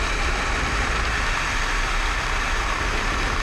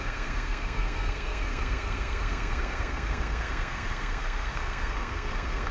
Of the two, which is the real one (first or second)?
first